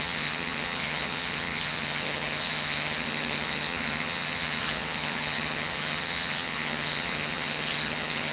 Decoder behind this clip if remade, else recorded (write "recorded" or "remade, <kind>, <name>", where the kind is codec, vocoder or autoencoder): remade, vocoder, HiFi-GAN